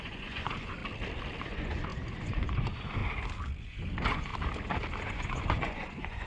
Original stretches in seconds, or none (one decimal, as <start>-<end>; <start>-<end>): 0.8-1.4; 3.0-3.6; 4.3-5.0